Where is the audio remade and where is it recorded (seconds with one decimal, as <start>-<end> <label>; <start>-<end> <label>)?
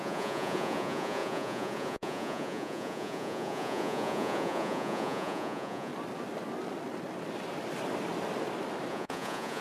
0.0-5.9 remade; 5.9-8.9 recorded; 8.9-9.6 remade